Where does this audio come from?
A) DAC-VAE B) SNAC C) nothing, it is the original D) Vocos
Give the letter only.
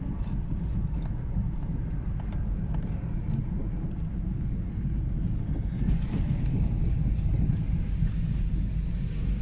C